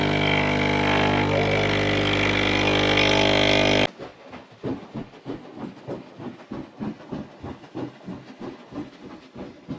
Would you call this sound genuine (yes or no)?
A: yes